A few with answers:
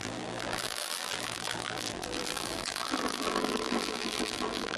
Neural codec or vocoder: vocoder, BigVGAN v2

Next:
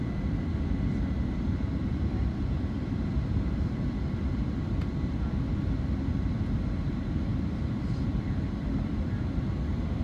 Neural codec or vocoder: vocoder, BigVGAN v2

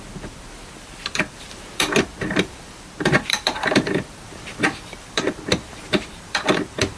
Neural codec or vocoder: vocoder, BigVGAN v2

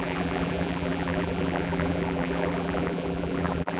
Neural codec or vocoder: vocoder, BigVGAN v2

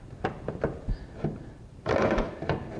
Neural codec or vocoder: vocoder, BigVGAN v2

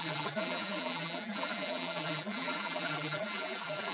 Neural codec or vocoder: vocoder, BigVGAN v2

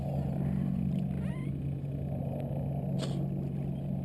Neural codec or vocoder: none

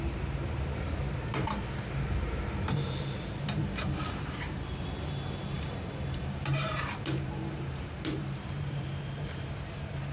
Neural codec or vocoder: vocoder, BigVGAN v2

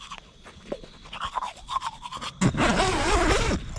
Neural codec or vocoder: none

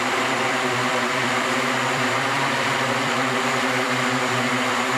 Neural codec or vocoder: vocoder, BigVGAN v2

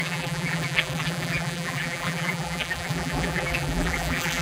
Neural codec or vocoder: vocoder, BigVGAN v2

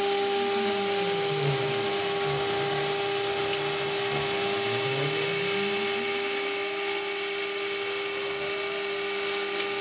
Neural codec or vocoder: none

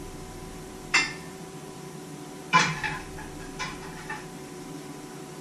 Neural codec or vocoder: vocoder, BigVGAN v2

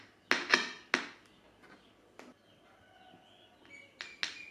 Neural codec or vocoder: none